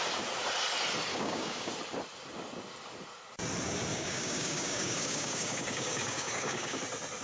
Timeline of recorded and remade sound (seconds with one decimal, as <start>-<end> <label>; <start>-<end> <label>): 0.0-1.1 recorded; 1.1-1.7 remade; 1.7-3.9 recorded; 3.9-6.8 remade; 6.8-7.2 recorded